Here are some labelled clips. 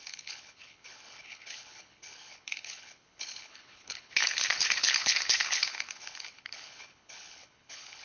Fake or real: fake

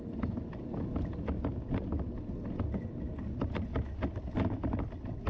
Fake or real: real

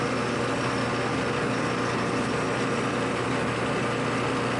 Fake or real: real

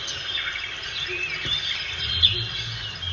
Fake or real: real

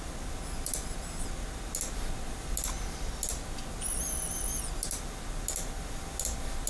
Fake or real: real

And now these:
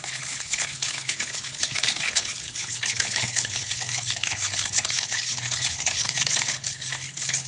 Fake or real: fake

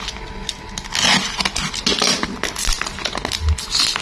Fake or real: real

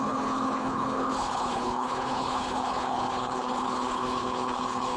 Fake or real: fake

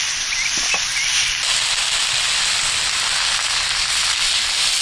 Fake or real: real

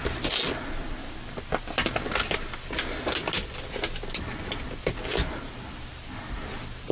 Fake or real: real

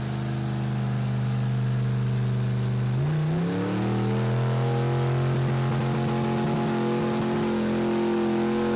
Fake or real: real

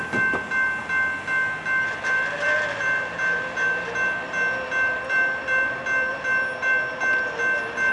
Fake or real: real